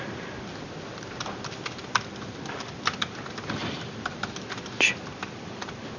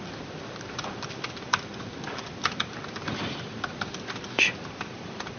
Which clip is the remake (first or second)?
second